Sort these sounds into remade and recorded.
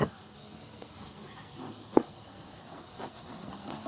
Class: remade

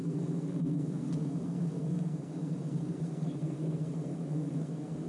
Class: remade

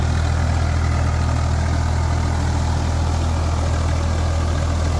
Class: recorded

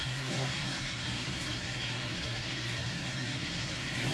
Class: remade